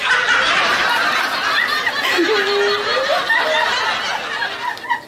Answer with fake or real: real